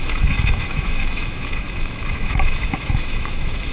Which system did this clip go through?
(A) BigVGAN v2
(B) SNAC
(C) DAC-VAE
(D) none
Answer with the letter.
C